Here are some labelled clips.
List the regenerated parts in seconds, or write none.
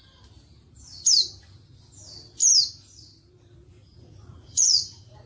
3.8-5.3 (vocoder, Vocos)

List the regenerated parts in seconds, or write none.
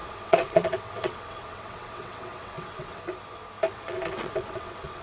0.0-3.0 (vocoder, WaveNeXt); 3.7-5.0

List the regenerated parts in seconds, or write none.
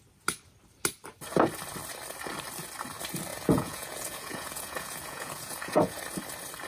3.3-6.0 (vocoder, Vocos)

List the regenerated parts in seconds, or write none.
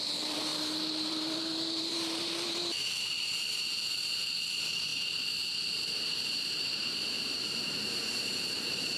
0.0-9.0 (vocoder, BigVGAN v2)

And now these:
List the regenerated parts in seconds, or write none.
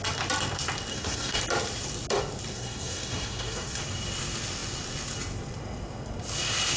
0.9-1.4 (codec, SNAC); 2.5-3.8